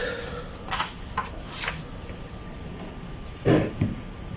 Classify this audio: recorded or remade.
recorded